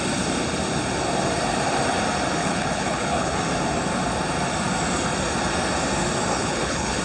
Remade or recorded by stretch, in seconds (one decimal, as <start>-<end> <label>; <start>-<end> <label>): 0.0-2.4 recorded; 2.4-3.4 remade; 3.4-6.3 recorded; 6.3-7.0 remade